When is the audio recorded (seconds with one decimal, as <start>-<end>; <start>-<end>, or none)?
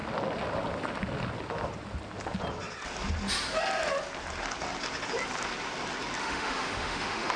0.0-6.2